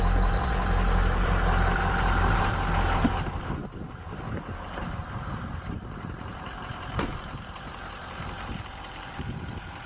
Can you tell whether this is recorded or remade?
remade